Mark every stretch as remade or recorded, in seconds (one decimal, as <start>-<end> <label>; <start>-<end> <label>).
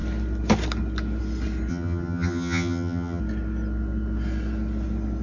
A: 0.0-1.7 recorded; 1.7-3.2 remade; 3.2-5.2 recorded